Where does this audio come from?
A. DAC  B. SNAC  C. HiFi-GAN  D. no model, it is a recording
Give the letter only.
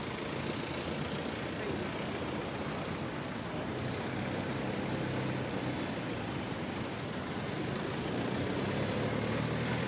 D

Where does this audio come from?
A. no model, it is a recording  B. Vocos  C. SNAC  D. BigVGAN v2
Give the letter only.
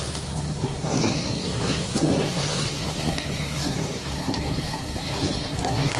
C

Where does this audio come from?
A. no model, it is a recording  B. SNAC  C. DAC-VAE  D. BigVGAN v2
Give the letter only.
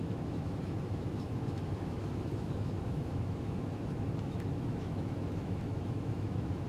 C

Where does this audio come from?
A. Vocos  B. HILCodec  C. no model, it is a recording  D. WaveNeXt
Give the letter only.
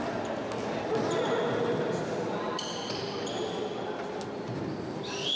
C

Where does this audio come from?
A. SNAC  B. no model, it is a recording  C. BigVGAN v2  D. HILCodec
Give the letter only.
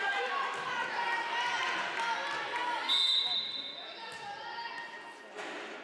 B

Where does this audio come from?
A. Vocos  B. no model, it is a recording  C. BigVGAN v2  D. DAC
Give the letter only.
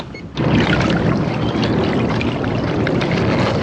B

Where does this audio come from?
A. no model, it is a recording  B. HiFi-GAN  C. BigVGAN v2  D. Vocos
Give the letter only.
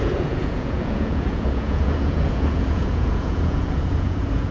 D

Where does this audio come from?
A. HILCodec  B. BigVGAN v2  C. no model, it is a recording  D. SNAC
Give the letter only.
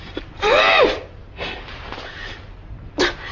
B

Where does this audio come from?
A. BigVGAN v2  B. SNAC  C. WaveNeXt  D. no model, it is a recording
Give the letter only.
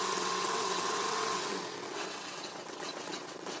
C